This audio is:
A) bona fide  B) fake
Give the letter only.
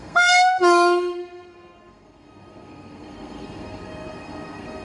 B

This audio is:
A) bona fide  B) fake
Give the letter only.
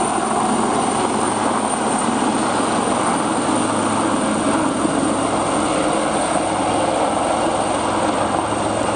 A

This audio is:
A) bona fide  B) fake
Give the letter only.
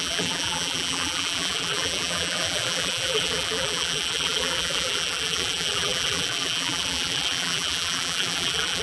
B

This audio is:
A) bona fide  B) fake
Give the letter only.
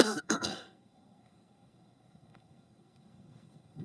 B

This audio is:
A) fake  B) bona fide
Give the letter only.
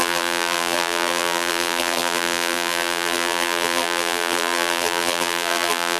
A